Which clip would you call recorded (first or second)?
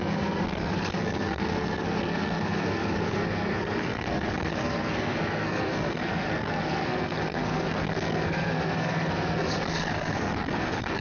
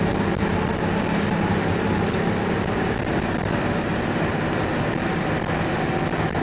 second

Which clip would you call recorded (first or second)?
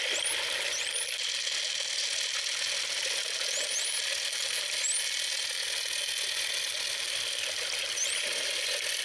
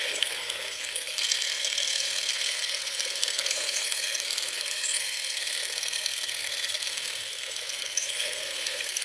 first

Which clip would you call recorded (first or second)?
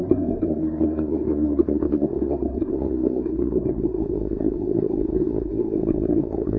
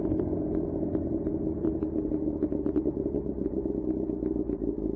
second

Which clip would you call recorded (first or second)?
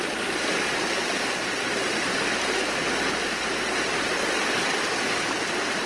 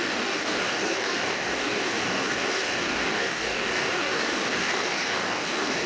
first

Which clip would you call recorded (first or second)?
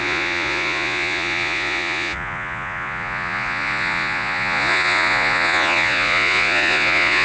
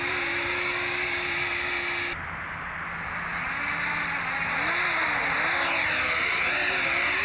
second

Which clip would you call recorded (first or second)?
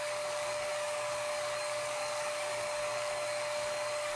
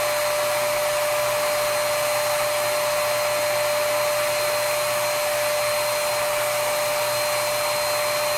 second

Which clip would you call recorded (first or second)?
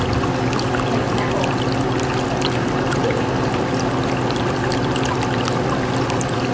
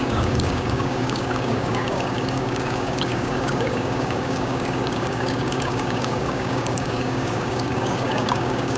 first